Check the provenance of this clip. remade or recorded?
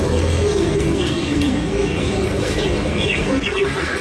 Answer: remade